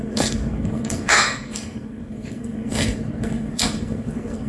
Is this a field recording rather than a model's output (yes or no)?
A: no